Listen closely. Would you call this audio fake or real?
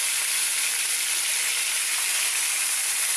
real